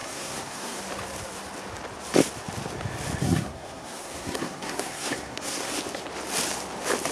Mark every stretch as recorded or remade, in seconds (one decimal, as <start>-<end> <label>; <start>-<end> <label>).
0.0-0.8 remade; 0.8-3.2 recorded; 3.2-5.7 remade; 5.7-7.1 recorded